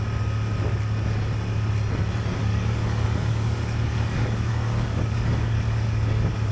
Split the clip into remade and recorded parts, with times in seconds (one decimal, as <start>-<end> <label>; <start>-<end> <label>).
0.0-2.4 recorded; 2.4-6.5 remade

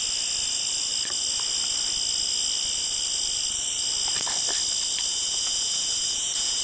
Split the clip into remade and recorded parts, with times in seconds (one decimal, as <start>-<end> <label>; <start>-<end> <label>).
0.0-5.1 recorded; 5.1-6.6 remade

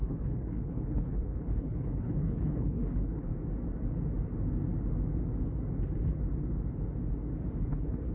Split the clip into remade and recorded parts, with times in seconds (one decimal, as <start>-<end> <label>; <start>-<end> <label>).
0.0-3.3 remade; 3.3-7.6 recorded; 7.6-8.1 remade

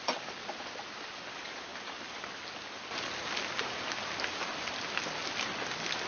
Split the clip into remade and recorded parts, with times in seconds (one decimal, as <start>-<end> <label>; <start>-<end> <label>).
0.0-6.1 recorded

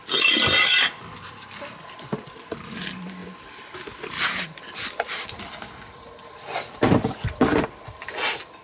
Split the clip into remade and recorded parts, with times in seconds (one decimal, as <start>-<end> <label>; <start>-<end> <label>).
0.0-8.6 recorded

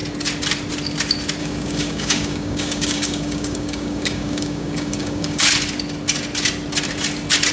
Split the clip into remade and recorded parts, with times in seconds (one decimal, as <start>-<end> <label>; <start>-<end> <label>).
0.0-1.4 recorded; 1.4-5.4 remade; 5.4-7.5 recorded

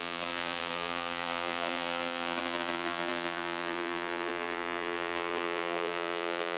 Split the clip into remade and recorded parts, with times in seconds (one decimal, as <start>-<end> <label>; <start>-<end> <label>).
0.0-6.6 remade

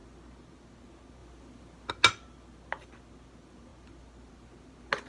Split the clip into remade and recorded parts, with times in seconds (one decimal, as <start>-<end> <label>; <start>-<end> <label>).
0.0-5.1 recorded